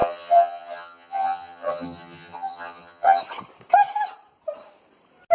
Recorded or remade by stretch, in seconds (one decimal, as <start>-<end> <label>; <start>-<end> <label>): 0.0-3.2 remade; 3.2-5.3 recorded